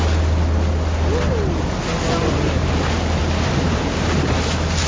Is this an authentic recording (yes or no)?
yes